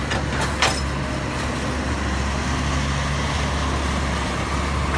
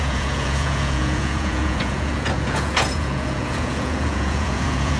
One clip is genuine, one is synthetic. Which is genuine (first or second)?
first